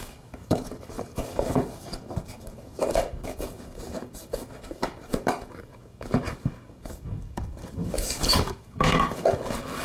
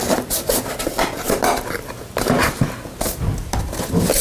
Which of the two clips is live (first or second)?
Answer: second